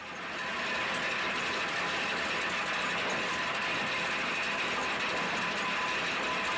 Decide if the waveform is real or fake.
real